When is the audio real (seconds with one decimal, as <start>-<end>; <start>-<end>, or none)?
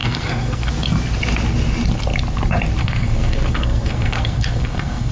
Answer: 0.7-2.8